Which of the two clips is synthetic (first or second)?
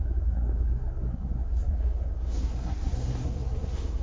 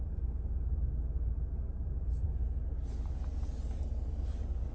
first